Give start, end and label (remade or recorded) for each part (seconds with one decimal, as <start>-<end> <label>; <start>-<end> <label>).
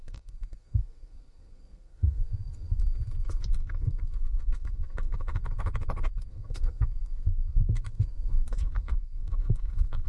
0.0-2.8 remade; 2.8-3.5 recorded; 3.5-5.4 remade; 5.4-6.3 recorded; 6.3-10.1 remade